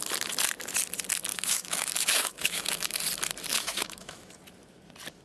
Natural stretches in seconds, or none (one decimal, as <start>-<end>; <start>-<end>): 0.0-1.3; 3.0-3.5; 4.3-5.2